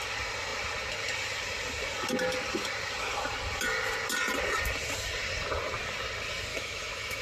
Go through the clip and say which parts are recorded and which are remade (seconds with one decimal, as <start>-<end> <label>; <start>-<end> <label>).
0.0-6.5 recorded; 6.5-7.2 remade